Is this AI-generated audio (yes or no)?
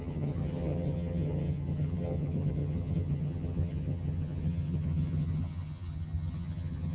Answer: yes